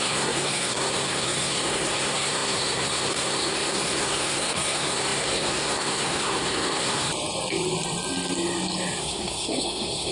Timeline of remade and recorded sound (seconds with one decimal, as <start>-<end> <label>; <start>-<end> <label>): 0.0-7.1 remade; 7.1-9.0 recorded; 9.0-10.1 remade